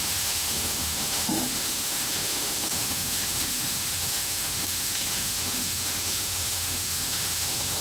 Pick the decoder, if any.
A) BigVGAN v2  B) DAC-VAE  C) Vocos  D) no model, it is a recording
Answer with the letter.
B